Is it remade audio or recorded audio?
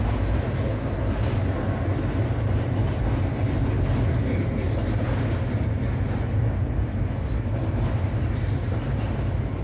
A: recorded